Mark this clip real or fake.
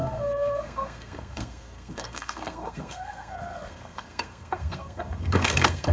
fake